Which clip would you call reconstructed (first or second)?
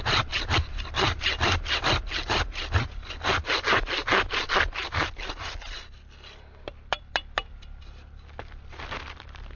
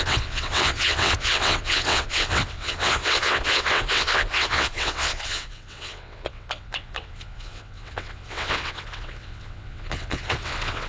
second